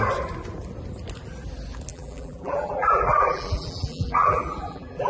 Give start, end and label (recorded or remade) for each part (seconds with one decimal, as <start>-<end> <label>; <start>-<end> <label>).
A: 0.0-1.9 recorded; 1.9-5.1 remade